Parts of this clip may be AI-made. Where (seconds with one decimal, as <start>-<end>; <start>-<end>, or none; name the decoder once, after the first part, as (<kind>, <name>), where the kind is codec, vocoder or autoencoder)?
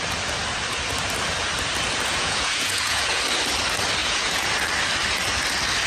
2.1-3.2 (vocoder, Vocos); 4.0-4.5